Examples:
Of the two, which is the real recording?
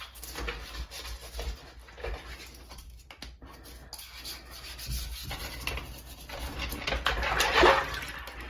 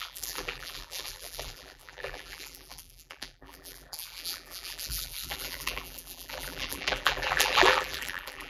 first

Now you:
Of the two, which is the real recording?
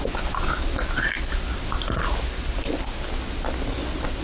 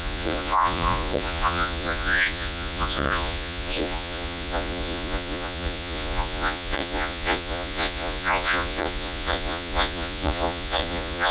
first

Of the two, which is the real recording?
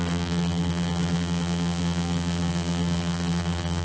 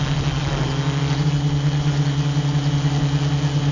second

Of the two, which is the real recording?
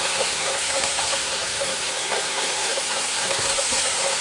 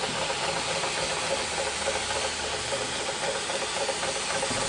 second